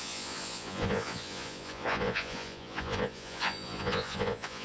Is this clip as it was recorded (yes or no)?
no